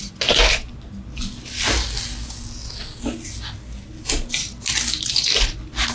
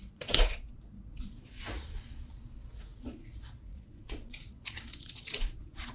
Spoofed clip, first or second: second